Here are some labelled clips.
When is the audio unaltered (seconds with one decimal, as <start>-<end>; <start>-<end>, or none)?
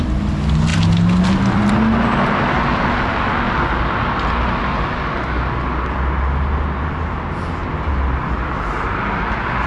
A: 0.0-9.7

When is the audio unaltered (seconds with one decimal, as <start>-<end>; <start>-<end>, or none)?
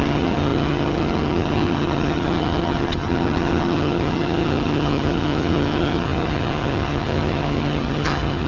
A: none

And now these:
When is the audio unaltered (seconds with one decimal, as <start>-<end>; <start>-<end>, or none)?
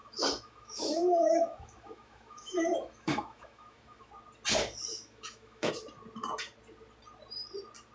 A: 4.1-4.9; 5.7-7.9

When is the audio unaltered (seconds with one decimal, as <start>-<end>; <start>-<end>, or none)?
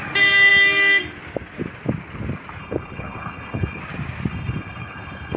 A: 0.0-2.6; 3.8-4.3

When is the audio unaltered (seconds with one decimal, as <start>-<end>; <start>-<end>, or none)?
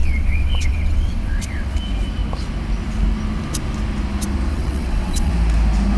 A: 1.7-4.5; 5.3-6.0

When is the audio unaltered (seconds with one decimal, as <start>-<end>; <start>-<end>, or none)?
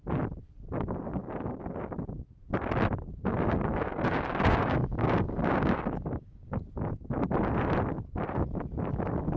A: 0.0-1.2; 1.9-3.1; 6.6-9.4